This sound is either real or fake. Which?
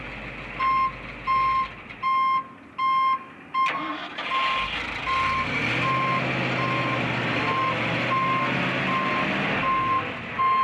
real